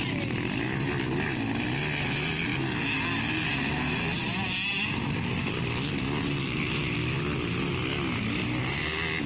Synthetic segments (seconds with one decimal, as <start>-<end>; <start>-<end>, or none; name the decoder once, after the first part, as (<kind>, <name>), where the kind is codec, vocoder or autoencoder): none